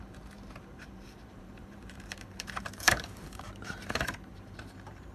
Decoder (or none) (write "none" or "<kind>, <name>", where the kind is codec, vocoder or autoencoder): vocoder, BigVGAN v2